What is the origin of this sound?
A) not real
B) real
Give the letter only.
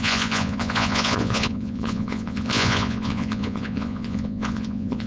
A